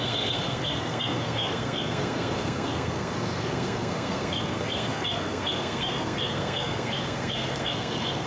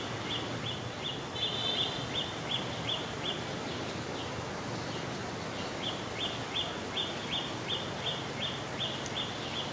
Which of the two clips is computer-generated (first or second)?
first